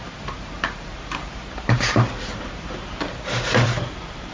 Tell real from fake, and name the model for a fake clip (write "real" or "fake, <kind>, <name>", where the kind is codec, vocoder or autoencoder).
fake, vocoder, BigVGAN v2